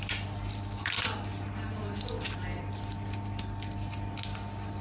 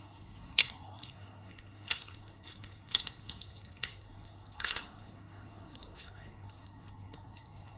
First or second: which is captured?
first